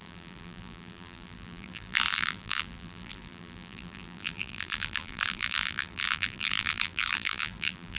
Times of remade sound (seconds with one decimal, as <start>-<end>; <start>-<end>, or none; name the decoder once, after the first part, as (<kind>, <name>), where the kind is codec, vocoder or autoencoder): 0.0-8.0 (vocoder, BigVGAN v2)